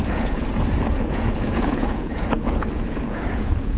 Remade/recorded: remade